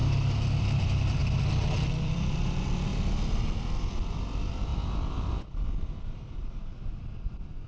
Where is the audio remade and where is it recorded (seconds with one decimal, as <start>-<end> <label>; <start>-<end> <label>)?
0.0-0.6 recorded; 0.6-1.2 remade; 1.2-1.9 recorded; 1.9-2.9 remade; 2.9-4.1 recorded; 4.1-4.7 remade; 4.7-5.3 recorded; 5.3-7.7 remade